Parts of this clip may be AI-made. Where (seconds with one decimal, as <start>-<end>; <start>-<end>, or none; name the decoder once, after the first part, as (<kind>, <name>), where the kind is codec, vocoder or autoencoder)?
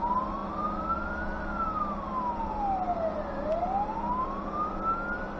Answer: none